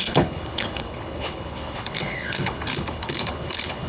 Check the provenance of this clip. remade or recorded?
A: remade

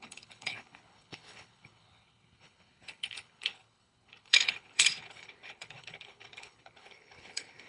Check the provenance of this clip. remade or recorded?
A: remade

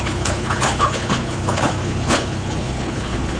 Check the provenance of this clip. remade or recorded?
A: remade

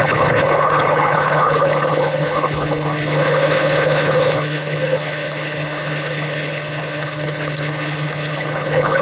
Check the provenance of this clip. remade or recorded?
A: remade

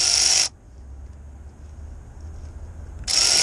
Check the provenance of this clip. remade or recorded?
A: recorded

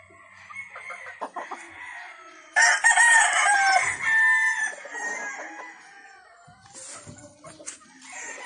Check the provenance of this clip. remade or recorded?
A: recorded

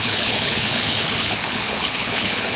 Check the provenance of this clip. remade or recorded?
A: remade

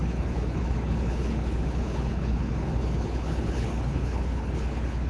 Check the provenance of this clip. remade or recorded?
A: remade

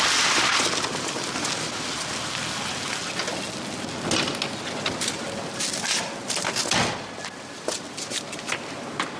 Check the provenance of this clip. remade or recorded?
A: recorded